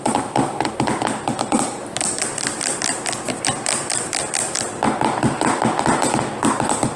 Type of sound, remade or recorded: recorded